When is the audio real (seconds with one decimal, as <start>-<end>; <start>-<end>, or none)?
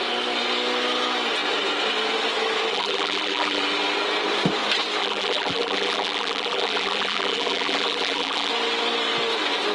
0.0-2.7; 3.6-5.0; 8.5-9.7